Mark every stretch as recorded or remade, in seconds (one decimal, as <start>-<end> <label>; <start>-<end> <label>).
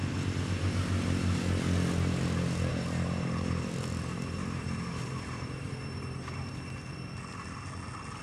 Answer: 0.0-2.7 recorded; 2.7-6.5 remade; 6.5-8.2 recorded